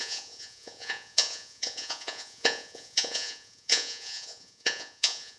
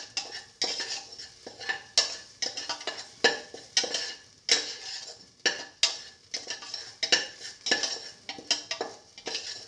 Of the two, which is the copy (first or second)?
first